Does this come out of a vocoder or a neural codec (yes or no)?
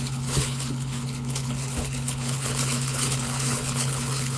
yes